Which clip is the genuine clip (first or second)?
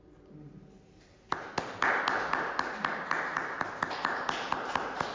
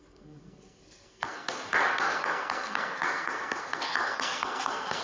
first